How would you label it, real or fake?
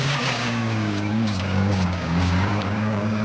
fake